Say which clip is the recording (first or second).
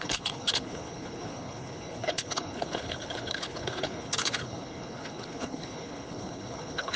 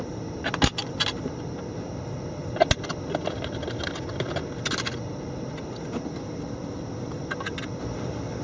second